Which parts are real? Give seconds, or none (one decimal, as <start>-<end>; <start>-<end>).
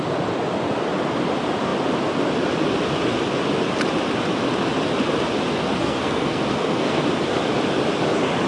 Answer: 0.0-5.8; 7.0-8.5